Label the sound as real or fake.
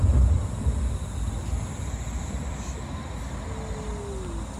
real